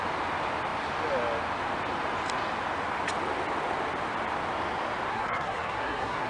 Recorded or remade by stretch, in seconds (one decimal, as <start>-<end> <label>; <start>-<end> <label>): 0.0-5.1 recorded; 5.1-6.3 remade